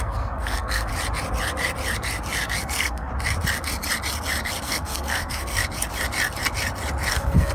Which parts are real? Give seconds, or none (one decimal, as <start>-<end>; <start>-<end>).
0.9-2.6; 3.1-4.6; 5.6-7.1